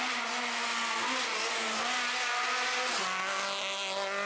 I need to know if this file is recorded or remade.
recorded